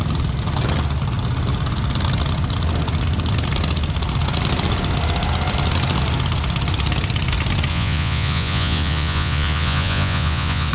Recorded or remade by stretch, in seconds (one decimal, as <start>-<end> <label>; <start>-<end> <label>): 0.0-7.7 recorded; 7.7-10.7 remade